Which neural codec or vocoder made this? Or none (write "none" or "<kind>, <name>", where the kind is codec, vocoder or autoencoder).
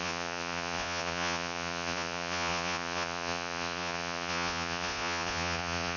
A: vocoder, Vocos